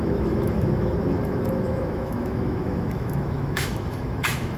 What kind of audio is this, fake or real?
fake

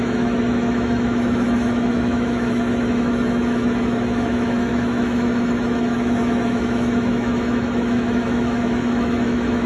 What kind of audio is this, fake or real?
fake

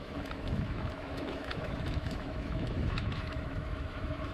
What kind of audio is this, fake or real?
fake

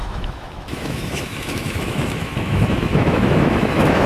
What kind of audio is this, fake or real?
fake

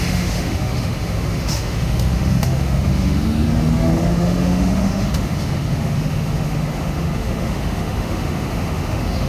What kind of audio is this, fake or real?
fake